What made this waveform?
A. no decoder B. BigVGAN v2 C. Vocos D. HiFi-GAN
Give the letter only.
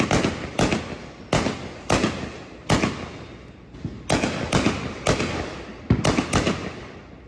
A